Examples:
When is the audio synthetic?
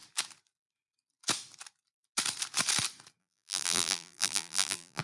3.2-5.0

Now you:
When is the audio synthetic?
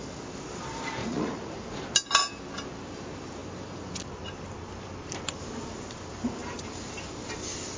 1.0-1.6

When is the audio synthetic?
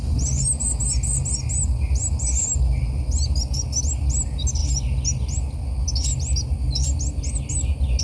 none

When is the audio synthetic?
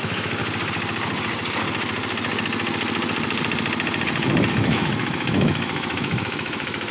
0.0-0.4; 4.5-6.9